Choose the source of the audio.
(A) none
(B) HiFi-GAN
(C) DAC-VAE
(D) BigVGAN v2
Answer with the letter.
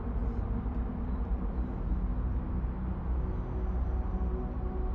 A